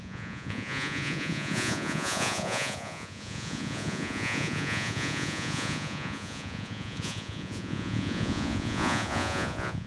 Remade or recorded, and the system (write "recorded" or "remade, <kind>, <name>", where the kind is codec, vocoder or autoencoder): remade, vocoder, Vocos